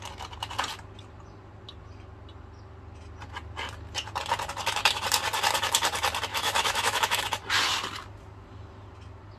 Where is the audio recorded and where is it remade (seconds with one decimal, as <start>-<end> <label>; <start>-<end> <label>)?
0.0-6.3 recorded; 6.3-7.2 remade; 7.2-9.4 recorded